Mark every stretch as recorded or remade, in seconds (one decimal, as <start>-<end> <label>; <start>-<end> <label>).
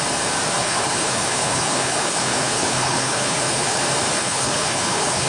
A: 0.0-0.6 recorded; 0.6-3.8 remade; 3.8-4.2 recorded; 4.2-5.3 remade